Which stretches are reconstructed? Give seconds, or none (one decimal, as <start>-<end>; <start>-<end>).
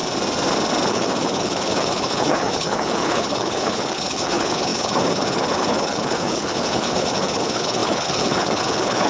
0.9-9.1